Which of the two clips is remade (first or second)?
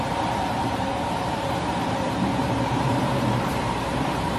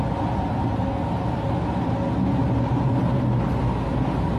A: first